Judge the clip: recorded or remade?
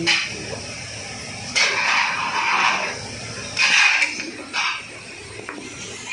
recorded